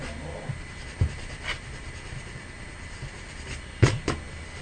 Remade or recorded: recorded